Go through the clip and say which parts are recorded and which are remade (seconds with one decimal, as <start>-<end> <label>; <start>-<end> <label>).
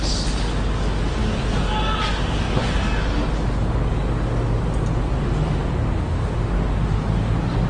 0.0-7.7 recorded